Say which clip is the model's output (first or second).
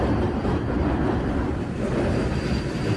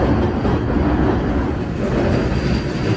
first